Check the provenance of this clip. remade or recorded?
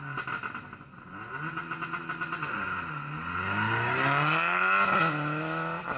recorded